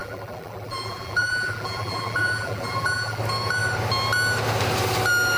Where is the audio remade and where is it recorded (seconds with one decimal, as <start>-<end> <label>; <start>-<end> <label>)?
0.0-3.2 remade; 3.2-5.4 recorded

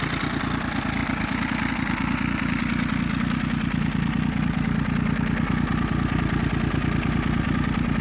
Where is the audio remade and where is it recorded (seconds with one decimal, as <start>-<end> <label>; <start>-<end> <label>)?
0.0-8.0 recorded

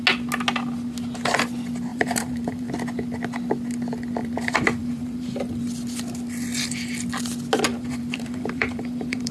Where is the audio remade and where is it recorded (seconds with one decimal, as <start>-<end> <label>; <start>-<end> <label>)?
0.0-1.9 recorded; 1.9-2.7 remade; 2.7-4.2 recorded; 4.2-5.6 remade; 5.6-7.7 recorded; 7.7-9.3 remade

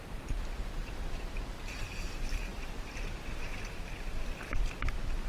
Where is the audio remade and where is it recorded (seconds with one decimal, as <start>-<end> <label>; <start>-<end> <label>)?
0.0-2.5 remade; 2.5-4.8 recorded; 4.8-5.3 remade

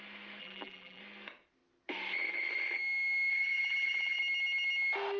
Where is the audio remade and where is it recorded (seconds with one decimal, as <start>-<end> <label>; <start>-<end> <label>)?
0.0-0.4 recorded; 0.4-1.0 remade; 1.0-3.3 recorded; 3.3-4.2 remade; 4.2-5.2 recorded

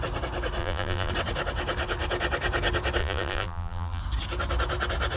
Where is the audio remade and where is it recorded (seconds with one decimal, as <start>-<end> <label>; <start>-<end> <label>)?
0.0-0.6 recorded; 0.6-1.1 remade; 1.1-3.0 recorded; 3.0-4.0 remade; 4.0-5.2 recorded